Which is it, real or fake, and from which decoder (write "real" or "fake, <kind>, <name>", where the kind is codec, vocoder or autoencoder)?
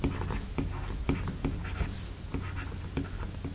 real